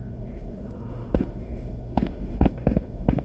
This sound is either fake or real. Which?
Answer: fake